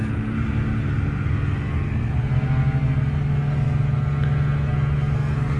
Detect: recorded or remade recorded